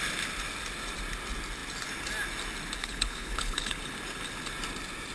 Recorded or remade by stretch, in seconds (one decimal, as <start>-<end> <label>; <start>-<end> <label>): 0.0-2.8 recorded; 2.8-3.8 remade; 3.8-5.1 recorded